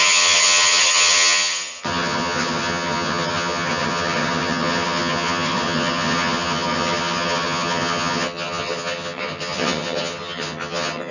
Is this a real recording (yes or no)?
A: no